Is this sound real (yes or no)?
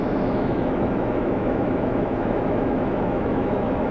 no